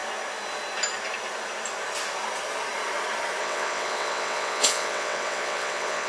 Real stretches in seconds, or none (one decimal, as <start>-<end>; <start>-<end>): 0.0-3.4